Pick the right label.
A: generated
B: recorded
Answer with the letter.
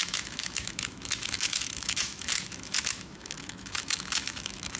A